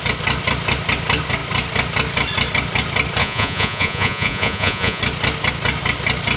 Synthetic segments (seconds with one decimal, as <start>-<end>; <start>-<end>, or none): 3.2-5.0